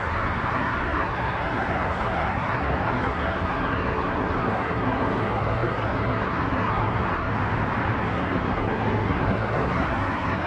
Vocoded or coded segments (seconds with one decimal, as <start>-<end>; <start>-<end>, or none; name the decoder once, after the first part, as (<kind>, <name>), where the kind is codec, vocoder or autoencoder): 0.0-7.3 (codec, SNAC); 8.0-10.5